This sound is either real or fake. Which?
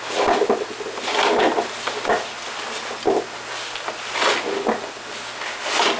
real